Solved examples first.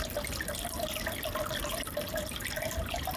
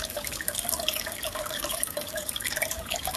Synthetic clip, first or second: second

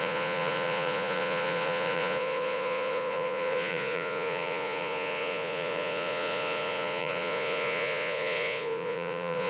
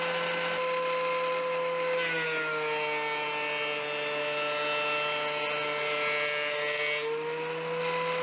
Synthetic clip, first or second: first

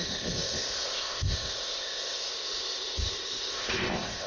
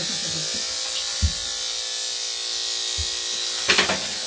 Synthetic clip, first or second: first